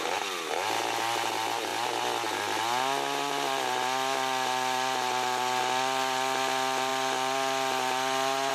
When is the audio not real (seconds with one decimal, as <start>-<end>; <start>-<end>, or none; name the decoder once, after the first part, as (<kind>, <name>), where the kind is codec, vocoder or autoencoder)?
6.9-8.5 (vocoder, BigVGAN v2)